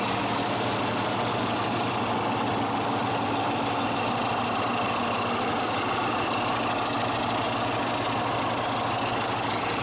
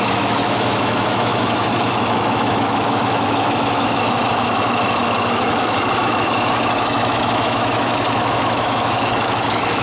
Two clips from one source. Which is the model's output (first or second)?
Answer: second